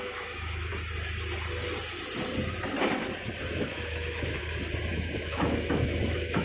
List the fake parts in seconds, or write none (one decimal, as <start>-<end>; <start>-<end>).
0.0-0.7; 3.5-4.4; 4.9-6.4